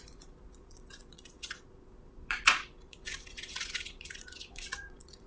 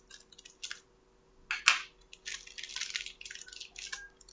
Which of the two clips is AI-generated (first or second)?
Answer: first